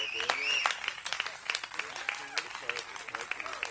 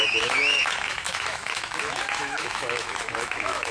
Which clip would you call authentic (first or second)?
first